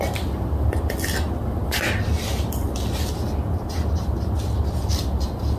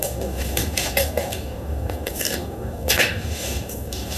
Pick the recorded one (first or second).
first